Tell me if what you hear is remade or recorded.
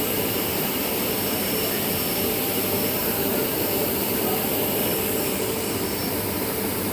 remade